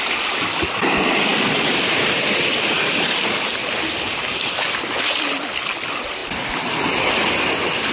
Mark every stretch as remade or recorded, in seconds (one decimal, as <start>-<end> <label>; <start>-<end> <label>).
0.0-7.9 recorded